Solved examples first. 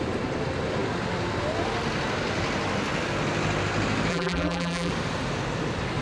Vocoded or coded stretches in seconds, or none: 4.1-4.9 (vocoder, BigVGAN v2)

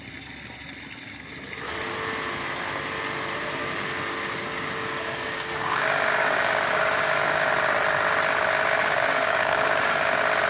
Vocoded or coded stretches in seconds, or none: 3.6-7.5 (codec, DAC); 8.8-10.0